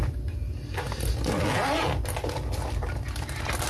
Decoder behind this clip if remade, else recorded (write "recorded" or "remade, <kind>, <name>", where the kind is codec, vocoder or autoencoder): recorded